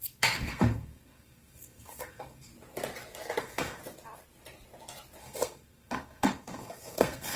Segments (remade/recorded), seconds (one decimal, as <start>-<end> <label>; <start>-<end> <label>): 0.0-2.5 remade; 2.5-3.4 recorded; 3.4-3.8 remade; 3.8-5.2 recorded; 5.2-7.4 remade